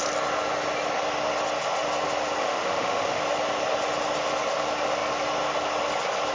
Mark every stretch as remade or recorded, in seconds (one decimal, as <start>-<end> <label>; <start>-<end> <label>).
0.0-2.4 recorded; 2.4-3.2 remade; 3.2-6.3 recorded